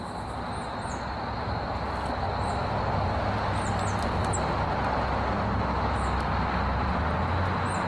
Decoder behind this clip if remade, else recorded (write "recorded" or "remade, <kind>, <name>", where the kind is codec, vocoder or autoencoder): recorded